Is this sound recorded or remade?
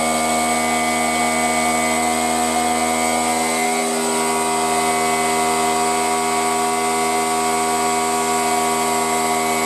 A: recorded